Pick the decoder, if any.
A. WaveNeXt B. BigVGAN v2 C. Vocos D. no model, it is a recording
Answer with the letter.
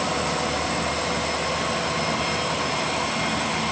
D